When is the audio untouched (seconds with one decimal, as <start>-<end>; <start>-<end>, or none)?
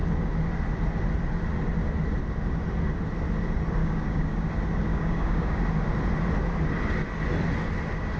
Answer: 0.0-3.8; 4.5-4.9; 5.6-8.2